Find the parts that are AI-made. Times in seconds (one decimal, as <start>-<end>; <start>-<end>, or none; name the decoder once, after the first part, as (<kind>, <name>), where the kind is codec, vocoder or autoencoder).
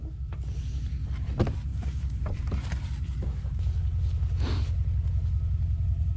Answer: 1.7-2.4 (vocoder, BigVGAN v2)